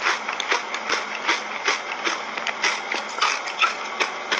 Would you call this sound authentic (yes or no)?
yes